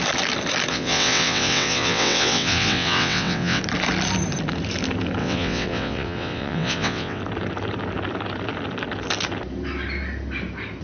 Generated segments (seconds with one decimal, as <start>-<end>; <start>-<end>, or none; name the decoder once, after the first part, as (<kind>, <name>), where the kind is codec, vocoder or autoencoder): 0.7-3.6 (vocoder, WaveNeXt); 5.2-7.2